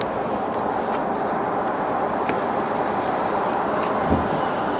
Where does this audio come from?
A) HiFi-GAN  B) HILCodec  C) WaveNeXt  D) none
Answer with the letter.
D